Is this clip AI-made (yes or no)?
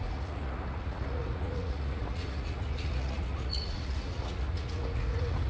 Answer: yes